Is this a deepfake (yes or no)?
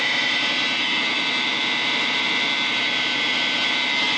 no